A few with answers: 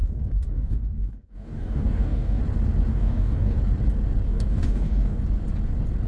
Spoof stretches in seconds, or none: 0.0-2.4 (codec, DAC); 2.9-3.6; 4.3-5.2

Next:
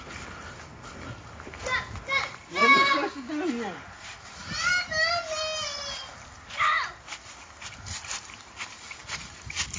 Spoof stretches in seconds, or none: 2.6-3.3 (codec, DAC)

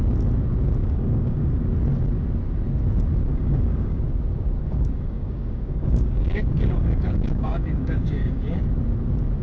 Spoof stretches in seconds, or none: 0.8-1.6 (codec, DAC); 3.3-4.0; 4.6-8.6

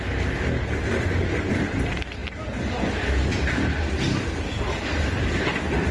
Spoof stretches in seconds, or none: none

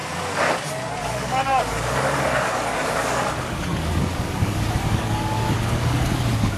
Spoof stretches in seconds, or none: 1.0-6.6 (codec, DAC)

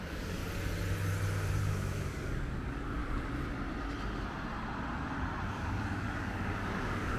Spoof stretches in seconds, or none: 0.0-0.4 (codec, DAC); 1.6-3.0; 5.5-7.2